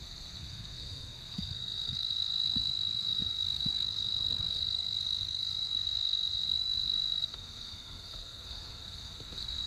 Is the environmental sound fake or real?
fake